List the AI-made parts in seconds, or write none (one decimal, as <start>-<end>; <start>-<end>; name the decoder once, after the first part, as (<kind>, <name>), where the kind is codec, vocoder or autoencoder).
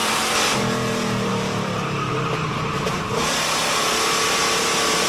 0.0-0.5 (vocoder, BigVGAN v2); 1.3-2.1; 2.5-5.1